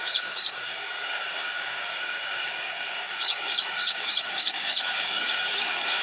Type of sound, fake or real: fake